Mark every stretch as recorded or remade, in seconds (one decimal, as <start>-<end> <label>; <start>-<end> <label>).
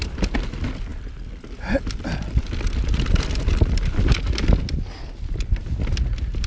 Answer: 0.0-6.5 recorded